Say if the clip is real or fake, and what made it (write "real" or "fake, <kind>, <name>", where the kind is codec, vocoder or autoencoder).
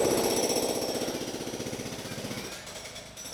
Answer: real